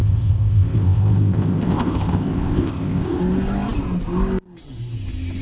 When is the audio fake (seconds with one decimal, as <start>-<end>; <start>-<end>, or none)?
0.0-3.2